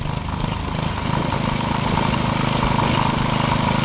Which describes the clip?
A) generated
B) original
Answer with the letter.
B